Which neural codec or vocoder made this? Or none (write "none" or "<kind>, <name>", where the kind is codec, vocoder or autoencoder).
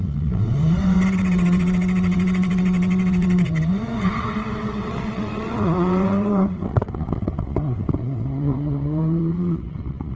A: vocoder, WaveNeXt